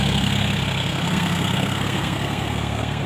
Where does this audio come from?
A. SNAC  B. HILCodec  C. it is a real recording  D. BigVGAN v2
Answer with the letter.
A